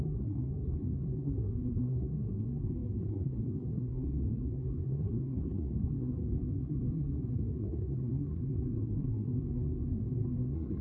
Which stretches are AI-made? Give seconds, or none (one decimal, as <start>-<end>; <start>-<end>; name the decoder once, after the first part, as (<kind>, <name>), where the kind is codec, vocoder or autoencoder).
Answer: 0.0-10.8 (codec, SNAC)